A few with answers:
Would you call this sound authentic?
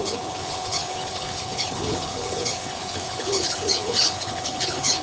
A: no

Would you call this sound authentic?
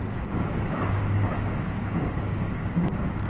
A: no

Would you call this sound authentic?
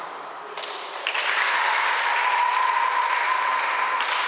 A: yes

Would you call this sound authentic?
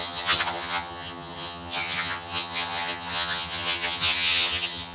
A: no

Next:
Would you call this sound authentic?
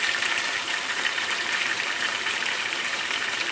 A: no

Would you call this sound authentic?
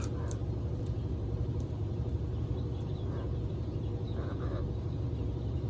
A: no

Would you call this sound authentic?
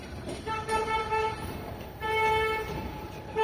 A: no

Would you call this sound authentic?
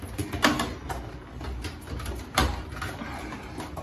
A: no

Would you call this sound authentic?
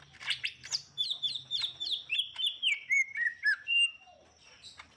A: no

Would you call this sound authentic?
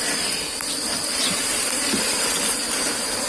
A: yes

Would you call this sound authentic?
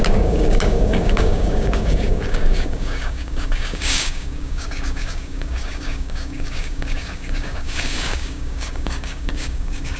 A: no